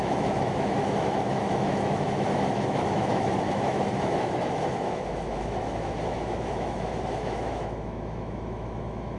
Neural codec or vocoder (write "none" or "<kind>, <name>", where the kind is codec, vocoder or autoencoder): autoencoder, DAC-VAE